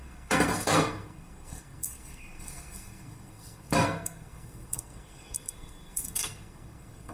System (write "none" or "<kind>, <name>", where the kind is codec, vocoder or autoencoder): codec, SNAC